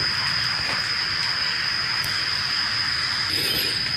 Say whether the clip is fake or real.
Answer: real